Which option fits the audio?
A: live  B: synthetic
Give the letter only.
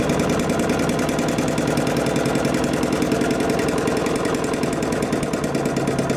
A